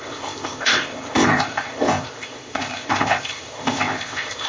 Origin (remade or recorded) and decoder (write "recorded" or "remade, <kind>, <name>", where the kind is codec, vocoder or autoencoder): remade, codec, ZipCodec